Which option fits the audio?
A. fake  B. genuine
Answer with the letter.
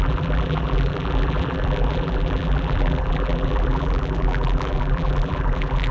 A